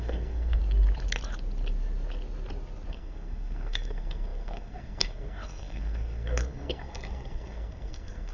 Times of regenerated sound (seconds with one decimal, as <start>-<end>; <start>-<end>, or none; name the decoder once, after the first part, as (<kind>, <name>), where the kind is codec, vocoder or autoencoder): 0.0-0.6 (codec, SNAC); 2.9-8.3